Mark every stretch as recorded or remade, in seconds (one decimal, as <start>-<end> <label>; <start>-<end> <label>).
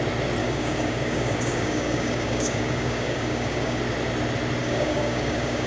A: 0.0-0.4 recorded; 0.4-3.8 remade; 3.8-4.6 recorded; 4.6-5.7 remade